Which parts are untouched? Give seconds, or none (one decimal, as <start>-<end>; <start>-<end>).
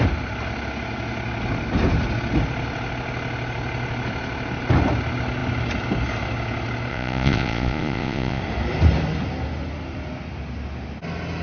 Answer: 0.0-6.9; 8.4-11.4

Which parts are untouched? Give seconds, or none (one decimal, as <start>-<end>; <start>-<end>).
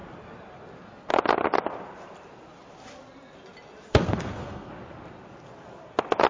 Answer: 0.0-3.9; 4.7-6.3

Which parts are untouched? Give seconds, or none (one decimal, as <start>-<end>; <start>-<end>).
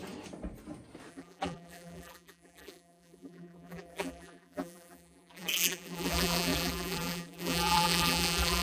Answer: 0.0-1.1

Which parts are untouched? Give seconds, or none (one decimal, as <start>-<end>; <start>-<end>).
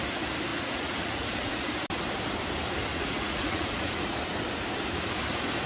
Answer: 0.0-0.5; 1.7-2.9; 4.0-5.7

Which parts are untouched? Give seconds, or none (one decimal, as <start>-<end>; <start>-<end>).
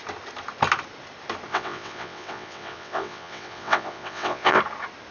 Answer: 0.0-1.5; 4.6-5.1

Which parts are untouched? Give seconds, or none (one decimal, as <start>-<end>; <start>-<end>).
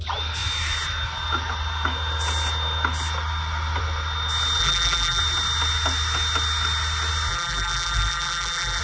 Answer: 0.0-4.6; 5.2-7.3